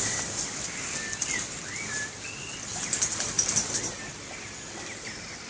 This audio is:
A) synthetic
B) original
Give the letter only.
B